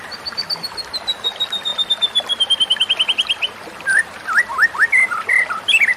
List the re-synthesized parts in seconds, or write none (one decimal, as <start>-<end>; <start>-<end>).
none